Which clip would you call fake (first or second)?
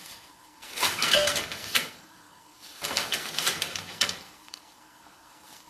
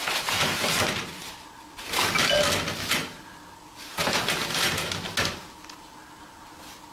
first